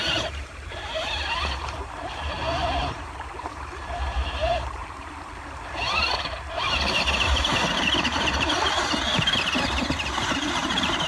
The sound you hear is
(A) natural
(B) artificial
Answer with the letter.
B